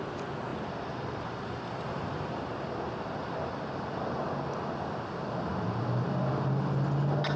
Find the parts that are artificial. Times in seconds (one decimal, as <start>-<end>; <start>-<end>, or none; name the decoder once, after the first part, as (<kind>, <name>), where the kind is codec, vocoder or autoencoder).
0.5-2.4 (vocoder, BigVGAN v2); 3.2-4.2